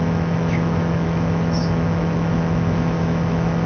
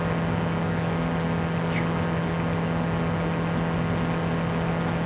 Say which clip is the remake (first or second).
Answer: first